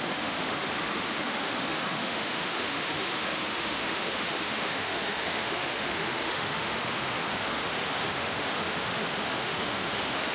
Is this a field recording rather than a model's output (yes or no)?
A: no